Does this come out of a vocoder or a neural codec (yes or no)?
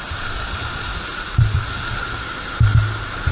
no